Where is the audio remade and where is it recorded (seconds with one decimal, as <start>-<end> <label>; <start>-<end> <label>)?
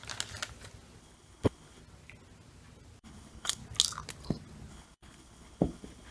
0.0-1.0 recorded; 1.0-1.8 remade; 1.8-3.0 recorded; 3.0-3.6 remade; 3.6-4.7 recorded; 4.7-6.1 remade